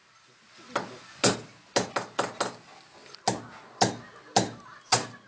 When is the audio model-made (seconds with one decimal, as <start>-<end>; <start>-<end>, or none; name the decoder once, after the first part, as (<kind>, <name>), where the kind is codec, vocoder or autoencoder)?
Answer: none